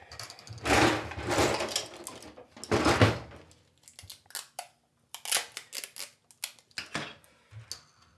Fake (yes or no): no